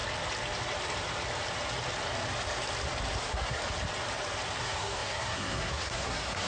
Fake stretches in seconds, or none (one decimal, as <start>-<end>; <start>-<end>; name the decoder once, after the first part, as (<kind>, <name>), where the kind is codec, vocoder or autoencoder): 3.2-3.6 (codec, SNAC); 4.6-6.5